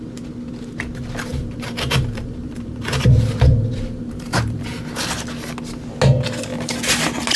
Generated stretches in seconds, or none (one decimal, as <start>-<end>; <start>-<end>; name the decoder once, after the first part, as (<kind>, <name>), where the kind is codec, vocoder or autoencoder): 1.3-4.8 (vocoder, BigVGAN v2)